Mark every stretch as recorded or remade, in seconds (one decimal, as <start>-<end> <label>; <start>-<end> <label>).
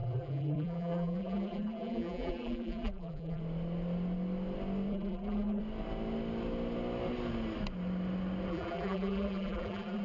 0.0-3.4 remade; 3.4-4.9 recorded; 4.9-5.6 remade; 5.6-8.5 recorded; 8.5-10.0 remade